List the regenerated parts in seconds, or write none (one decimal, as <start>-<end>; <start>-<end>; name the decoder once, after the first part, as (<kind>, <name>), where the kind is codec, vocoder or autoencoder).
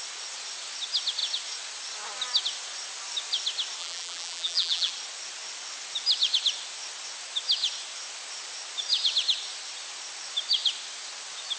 3.8-4.9 (vocoder, BigVGAN v2)